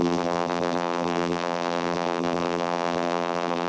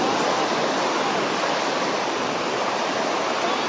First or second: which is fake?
first